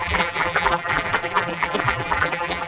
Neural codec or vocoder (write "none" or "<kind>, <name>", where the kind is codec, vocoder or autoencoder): vocoder, BigVGAN v2